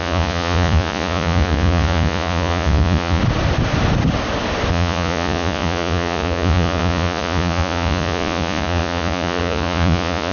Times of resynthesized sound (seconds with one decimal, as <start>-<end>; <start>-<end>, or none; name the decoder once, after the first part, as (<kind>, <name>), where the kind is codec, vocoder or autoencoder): 0.0-3.2 (vocoder, Vocos); 4.7-10.3